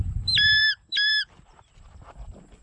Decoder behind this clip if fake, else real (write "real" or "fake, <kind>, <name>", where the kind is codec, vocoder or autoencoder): fake, vocoder, BigVGAN v2